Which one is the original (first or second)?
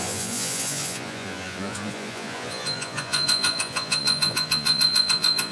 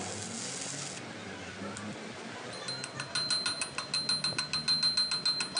second